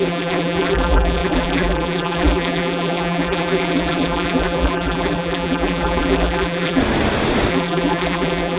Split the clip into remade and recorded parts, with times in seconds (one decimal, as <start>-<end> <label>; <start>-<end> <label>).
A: 0.0-6.8 remade; 6.8-7.5 recorded; 7.5-8.6 remade